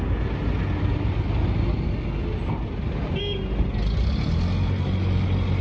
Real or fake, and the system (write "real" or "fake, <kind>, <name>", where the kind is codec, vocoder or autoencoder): real